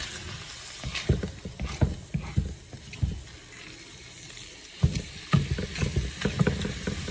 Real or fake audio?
real